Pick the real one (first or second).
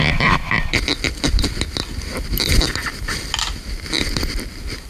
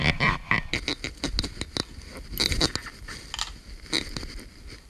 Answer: second